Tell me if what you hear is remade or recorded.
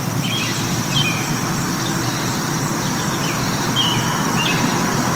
recorded